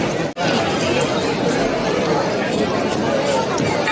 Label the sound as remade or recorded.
recorded